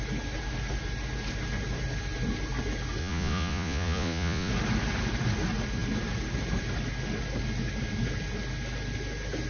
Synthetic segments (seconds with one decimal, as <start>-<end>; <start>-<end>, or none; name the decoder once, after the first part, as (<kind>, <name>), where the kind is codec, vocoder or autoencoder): 3.0-4.5 (vocoder, Vocos)